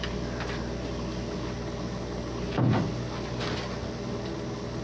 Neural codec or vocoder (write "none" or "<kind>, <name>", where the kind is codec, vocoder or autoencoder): none